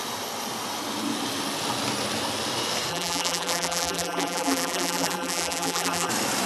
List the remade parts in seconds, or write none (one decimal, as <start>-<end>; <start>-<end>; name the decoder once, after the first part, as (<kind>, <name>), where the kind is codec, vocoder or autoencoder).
2.9-6.1 (vocoder, BigVGAN v2)

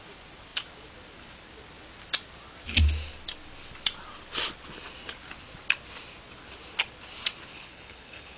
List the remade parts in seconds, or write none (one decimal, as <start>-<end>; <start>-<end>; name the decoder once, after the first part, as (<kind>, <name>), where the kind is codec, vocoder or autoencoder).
7.5-8.4 (codec, HILCodec)

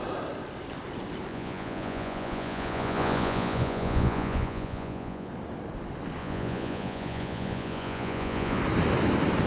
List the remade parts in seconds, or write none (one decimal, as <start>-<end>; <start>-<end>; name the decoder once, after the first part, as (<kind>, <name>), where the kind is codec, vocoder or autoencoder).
1.3-5.3 (vocoder, Vocos); 6.2-8.6

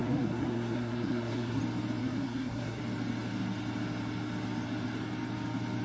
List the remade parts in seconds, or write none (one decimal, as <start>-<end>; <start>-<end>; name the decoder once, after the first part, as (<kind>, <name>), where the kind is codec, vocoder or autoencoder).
0.0-1.6 (codec, SNAC); 2.0-2.8

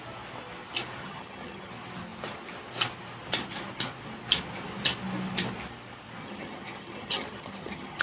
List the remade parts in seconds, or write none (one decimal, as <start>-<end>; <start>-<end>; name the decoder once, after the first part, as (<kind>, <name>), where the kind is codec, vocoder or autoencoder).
1.0-1.7 (vocoder, HiFi-GAN); 6.2-8.0

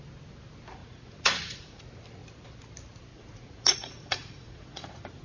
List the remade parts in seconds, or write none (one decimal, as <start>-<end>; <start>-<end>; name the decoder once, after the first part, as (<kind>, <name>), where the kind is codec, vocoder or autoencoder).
0.8-1.8 (vocoder, Vocos); 3.1-5.2

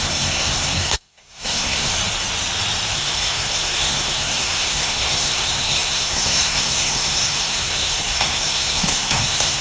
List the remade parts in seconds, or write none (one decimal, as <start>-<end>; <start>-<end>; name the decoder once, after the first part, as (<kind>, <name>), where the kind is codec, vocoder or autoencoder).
0.0-1.9 (codec, SNAC); 2.9-9.6